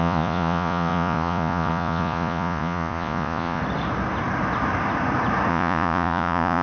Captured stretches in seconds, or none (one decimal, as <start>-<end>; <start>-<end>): 3.6-5.5